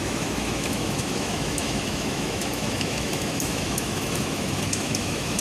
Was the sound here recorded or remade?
remade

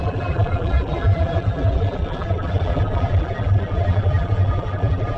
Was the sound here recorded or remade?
remade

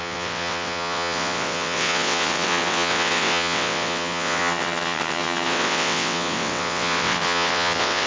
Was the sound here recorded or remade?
remade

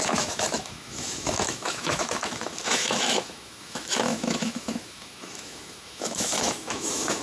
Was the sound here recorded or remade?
remade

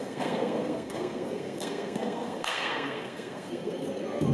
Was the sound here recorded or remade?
remade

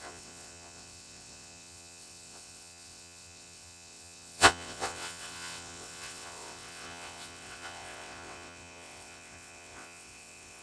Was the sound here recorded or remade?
remade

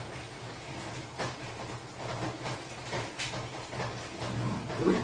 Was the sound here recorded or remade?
recorded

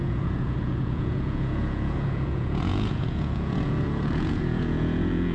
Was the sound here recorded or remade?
remade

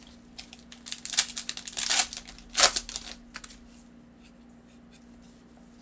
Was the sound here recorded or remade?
recorded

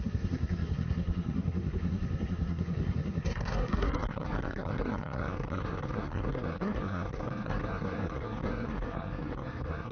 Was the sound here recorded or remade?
remade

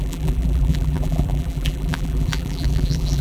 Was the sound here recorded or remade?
remade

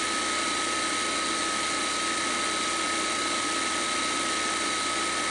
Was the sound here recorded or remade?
recorded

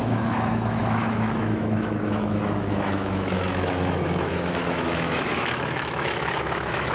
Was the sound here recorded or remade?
remade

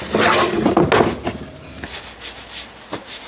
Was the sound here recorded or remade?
recorded